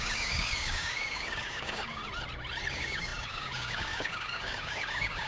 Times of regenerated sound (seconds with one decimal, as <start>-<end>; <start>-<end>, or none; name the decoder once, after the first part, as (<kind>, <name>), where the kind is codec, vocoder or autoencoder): 0.0-2.0 (codec, DAC); 2.7-5.3